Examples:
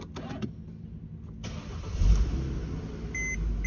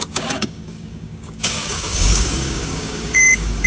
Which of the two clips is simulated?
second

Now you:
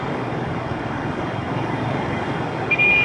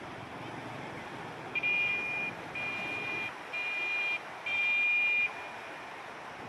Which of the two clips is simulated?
first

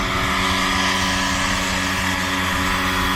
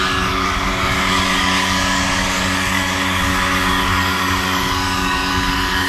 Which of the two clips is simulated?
second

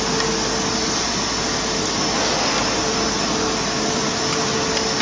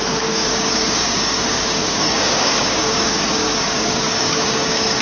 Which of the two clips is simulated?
second